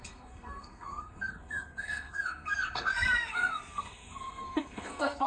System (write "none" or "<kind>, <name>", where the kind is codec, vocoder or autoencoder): codec, SNAC